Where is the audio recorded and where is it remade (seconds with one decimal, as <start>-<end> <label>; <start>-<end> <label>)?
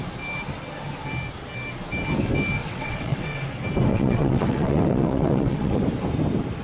0.0-2.6 recorded; 2.6-3.4 remade; 3.4-3.9 recorded; 3.9-5.8 remade; 5.8-6.6 recorded